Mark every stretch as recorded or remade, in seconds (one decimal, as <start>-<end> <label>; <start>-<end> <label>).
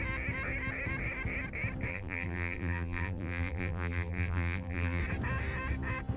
0.0-1.9 recorded; 1.9-5.0 remade; 5.0-6.2 recorded